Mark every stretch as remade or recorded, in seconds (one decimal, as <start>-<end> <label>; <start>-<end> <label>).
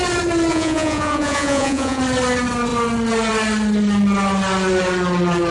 0.0-0.5 recorded; 0.5-2.0 remade; 2.0-5.5 recorded